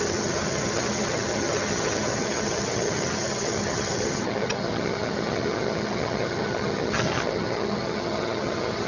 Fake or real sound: fake